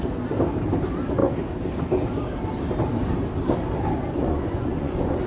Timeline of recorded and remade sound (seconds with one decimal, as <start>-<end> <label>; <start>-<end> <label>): 0.0-4.2 recorded; 4.2-5.3 remade